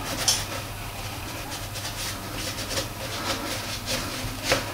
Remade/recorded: recorded